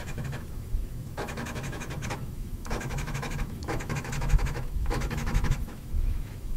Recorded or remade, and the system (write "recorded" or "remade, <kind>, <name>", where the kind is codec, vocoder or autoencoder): remade, autoencoder, DAC-VAE